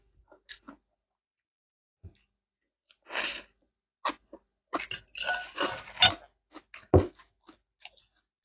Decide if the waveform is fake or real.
real